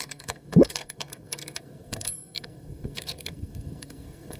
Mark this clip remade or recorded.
remade